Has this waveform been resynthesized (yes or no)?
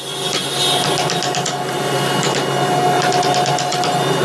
no